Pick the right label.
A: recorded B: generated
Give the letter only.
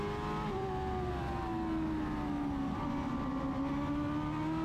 A